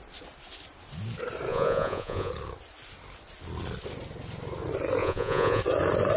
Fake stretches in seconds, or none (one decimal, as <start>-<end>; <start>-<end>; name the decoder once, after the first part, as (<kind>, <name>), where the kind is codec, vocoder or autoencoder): 1.5-2.3 (vocoder, Vocos); 5.0-5.6